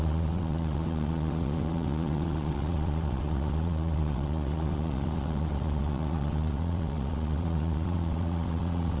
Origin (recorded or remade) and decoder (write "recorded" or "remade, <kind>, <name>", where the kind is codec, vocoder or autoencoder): remade, vocoder, WaveNeXt